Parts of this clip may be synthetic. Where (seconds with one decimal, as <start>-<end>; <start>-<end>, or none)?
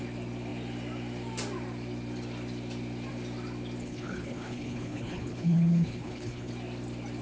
3.8-6.5